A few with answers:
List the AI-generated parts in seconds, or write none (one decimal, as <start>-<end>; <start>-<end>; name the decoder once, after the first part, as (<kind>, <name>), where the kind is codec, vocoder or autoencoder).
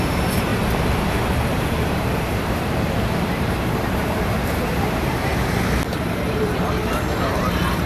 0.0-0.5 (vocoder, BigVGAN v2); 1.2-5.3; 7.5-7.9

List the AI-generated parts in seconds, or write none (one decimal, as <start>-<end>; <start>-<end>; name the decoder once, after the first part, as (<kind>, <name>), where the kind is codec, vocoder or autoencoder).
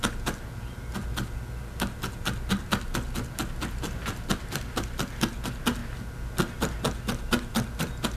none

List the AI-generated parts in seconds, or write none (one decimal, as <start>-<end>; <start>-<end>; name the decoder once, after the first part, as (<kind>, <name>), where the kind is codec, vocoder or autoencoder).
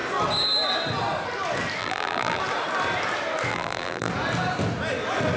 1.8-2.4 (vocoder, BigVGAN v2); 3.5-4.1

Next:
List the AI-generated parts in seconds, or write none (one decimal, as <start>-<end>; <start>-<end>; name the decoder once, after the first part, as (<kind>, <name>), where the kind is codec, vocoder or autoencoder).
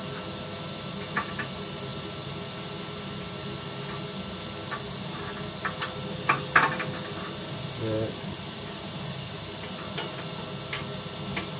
none